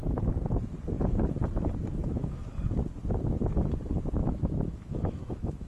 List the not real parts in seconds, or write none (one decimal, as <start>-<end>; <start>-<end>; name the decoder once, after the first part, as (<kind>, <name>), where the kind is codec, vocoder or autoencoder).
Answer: 1.9-2.4 (autoencoder, DAC-VAE); 4.2-5.7